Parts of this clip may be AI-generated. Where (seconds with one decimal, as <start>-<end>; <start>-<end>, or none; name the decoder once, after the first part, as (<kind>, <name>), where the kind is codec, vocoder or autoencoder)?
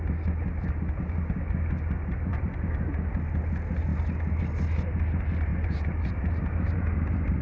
2.3-2.8 (vocoder, BigVGAN v2); 5.5-7.4